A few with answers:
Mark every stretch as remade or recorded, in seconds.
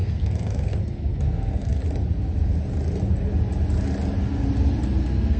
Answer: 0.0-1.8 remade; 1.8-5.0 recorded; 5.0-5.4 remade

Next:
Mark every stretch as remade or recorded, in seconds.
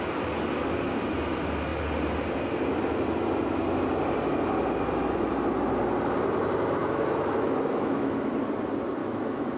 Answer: 0.0-6.8 recorded; 6.8-8.3 remade; 8.3-9.0 recorded; 9.0-9.6 remade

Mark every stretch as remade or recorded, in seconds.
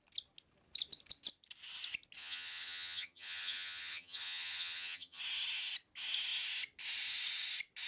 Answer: 0.0-2.2 recorded; 2.2-5.2 remade; 5.2-7.9 recorded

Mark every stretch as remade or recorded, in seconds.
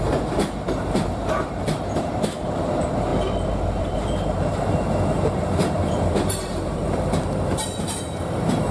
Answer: 0.0-3.1 remade; 3.1-3.8 recorded; 3.8-8.7 remade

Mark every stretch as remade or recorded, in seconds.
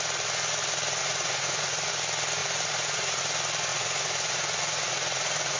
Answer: 0.0-1.0 recorded; 1.0-1.9 remade; 1.9-2.4 recorded; 2.4-3.2 remade; 3.2-3.7 recorded; 3.7-5.6 remade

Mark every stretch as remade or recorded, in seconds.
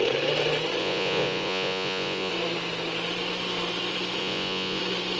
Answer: 0.0-0.8 recorded; 0.8-2.3 remade; 2.3-4.2 recorded; 4.2-4.8 remade; 4.8-5.2 recorded